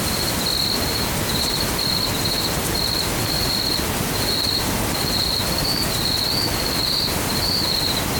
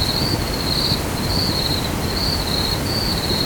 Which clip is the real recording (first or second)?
first